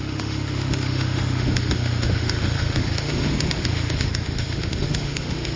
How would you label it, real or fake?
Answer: fake